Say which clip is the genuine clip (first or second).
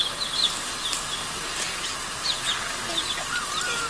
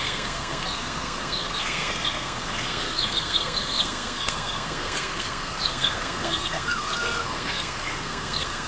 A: first